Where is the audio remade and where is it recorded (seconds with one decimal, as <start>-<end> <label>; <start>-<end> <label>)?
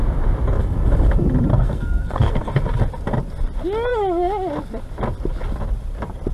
0.0-1.5 recorded; 1.5-2.5 remade; 2.5-6.3 recorded